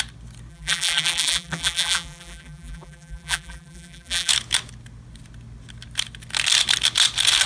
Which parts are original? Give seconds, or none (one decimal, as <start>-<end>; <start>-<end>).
0.0-0.5; 4.3-7.5